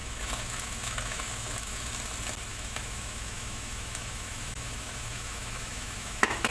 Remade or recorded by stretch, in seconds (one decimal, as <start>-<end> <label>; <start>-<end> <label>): 0.0-1.9 remade; 1.9-2.5 recorded; 2.5-6.5 remade

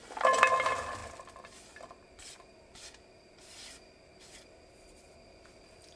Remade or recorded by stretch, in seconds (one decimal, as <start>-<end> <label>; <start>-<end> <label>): 0.0-6.0 recorded

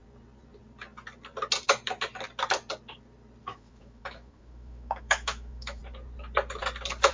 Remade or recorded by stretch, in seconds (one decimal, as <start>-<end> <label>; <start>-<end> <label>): 0.0-3.4 recorded; 3.4-5.8 remade; 5.8-7.1 recorded

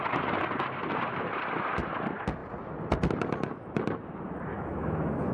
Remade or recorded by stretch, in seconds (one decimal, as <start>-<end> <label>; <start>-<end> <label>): 0.0-4.5 recorded; 4.5-5.3 remade

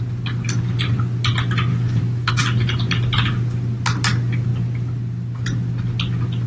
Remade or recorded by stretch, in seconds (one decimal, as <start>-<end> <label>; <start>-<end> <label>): 0.0-1.7 recorded; 1.7-2.3 remade; 2.3-6.5 recorded

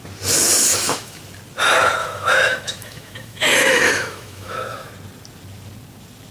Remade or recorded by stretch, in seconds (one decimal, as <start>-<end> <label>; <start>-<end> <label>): 0.0-0.7 recorded; 0.7-1.2 remade; 1.2-2.0 recorded; 2.0-4.9 remade; 4.9-6.3 recorded

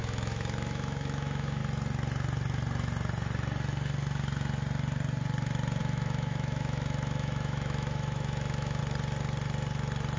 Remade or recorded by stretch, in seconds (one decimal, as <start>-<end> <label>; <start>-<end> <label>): 0.0-1.6 remade; 1.6-5.8 recorded; 5.8-8.8 remade; 8.8-10.2 recorded